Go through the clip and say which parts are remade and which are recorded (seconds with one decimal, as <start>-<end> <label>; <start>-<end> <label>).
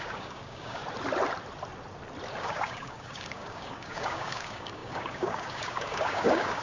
0.0-0.8 remade; 0.8-2.4 recorded; 2.4-6.6 remade